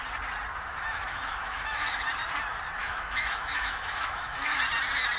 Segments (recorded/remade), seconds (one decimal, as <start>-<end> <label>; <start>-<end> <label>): 0.0-0.5 recorded; 0.5-2.0 remade; 2.0-2.8 recorded; 2.8-4.6 remade; 4.6-5.2 recorded